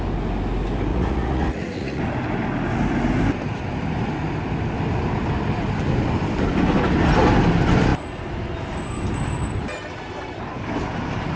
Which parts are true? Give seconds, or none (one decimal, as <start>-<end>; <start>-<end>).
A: 0.0-0.9; 2.0-11.4